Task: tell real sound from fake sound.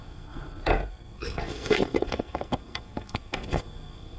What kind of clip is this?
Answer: fake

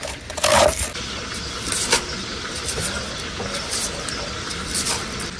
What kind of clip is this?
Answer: real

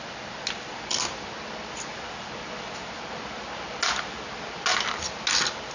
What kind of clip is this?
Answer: real